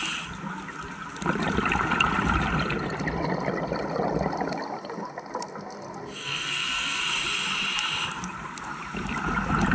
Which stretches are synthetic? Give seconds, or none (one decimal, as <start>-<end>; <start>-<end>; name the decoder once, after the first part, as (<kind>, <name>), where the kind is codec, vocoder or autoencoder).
6.2-7.0 (codec, SNAC)